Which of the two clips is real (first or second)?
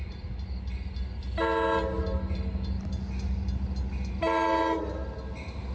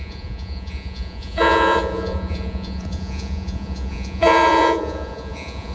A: first